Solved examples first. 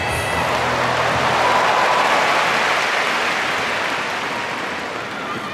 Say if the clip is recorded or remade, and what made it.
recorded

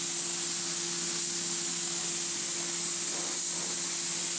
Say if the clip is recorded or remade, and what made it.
recorded